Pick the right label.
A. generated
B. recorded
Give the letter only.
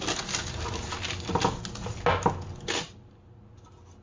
B